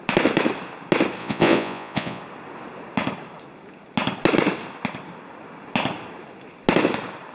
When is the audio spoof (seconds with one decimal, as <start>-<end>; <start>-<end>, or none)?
1.2-2.2